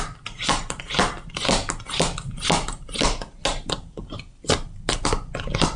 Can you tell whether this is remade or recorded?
recorded